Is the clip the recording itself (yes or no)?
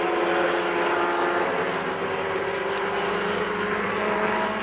yes